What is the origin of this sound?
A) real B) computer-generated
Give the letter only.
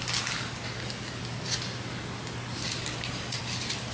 A